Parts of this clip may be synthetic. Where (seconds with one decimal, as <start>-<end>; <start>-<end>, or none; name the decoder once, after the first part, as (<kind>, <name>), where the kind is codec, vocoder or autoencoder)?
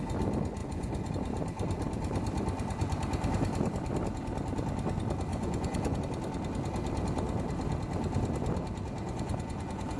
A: 0.6-1.1 (vocoder, Vocos); 5.3-6.0; 9.0-10.0